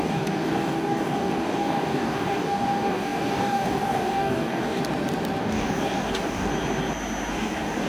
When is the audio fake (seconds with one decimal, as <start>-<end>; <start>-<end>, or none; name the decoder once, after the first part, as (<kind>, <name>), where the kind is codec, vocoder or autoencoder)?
0.0-4.8 (codec, DAC); 5.4-6.5; 7.3-7.9